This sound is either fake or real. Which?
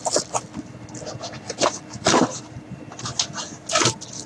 real